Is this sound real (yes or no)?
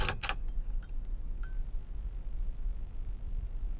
yes